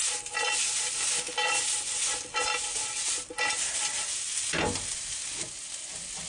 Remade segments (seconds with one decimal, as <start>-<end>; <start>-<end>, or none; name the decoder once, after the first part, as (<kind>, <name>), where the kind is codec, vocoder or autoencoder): none